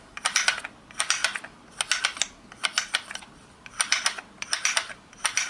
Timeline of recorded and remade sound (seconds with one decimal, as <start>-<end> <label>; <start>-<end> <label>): 0.0-1.2 remade; 1.2-2.0 recorded; 2.0-5.5 remade